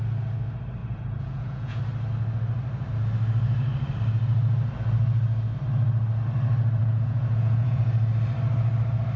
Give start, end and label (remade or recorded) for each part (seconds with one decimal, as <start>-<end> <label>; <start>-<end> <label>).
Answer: 0.0-0.8 recorded; 0.8-1.8 remade; 1.8-6.8 recorded; 6.8-7.8 remade; 7.8-9.2 recorded